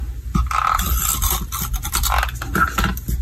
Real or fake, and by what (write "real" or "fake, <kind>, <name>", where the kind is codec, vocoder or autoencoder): real